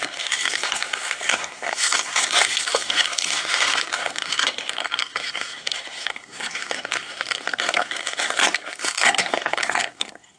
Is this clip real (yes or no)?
no